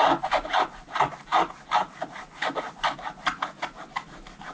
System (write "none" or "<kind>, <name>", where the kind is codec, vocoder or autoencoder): none